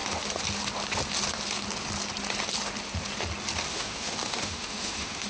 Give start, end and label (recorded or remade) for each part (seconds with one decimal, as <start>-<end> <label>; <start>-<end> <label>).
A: 0.0-3.7 recorded; 3.7-5.3 remade